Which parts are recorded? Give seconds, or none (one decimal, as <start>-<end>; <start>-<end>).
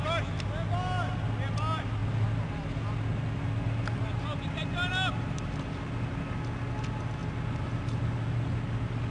0.0-9.1